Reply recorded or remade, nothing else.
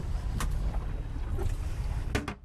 recorded